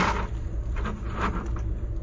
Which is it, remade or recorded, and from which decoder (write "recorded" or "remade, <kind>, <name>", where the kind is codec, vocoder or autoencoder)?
recorded